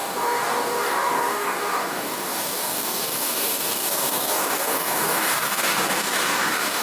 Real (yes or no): no